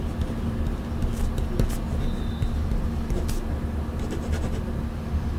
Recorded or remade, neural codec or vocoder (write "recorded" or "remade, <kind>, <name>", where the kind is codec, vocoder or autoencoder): recorded